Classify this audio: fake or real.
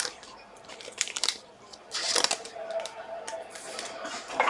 fake